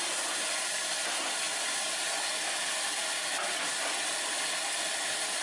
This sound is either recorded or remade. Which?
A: recorded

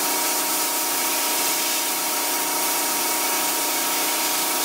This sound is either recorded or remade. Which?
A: remade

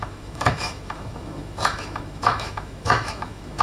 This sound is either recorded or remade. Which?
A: remade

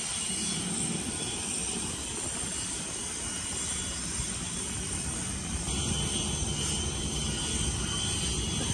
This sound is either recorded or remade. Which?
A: recorded